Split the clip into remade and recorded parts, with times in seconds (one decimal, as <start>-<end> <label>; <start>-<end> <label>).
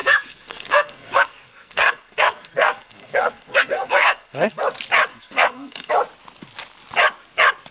0.0-4.6 remade; 4.6-5.1 recorded; 5.1-5.9 remade; 5.9-7.7 recorded